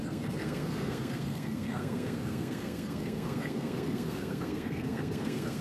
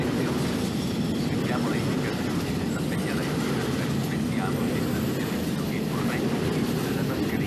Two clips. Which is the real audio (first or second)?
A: second